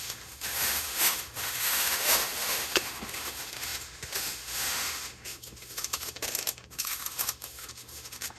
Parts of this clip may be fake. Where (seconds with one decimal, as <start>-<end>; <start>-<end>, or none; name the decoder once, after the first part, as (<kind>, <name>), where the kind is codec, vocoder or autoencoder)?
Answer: 0.0-8.4 (autoencoder, DAC-VAE)